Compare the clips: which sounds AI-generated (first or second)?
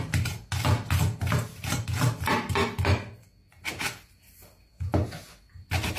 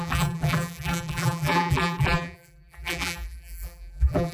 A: second